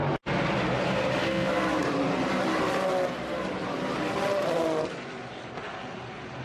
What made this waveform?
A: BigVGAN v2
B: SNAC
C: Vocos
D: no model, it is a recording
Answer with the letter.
D